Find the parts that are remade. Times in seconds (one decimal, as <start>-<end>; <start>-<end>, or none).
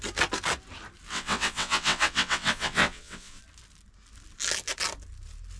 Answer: 1.1-3.4